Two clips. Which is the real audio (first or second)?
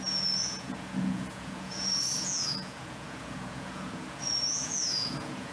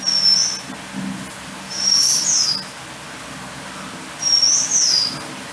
second